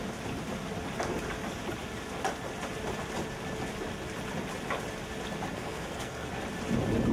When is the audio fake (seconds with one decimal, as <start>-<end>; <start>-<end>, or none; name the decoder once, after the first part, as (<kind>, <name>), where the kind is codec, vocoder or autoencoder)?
5.5-6.3 (codec, SNAC)